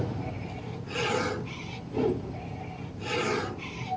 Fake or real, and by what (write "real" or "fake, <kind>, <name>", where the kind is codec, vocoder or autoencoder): real